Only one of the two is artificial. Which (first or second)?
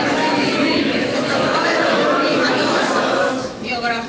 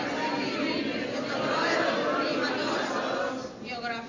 first